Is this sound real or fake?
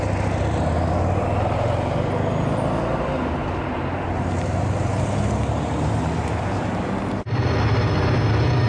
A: real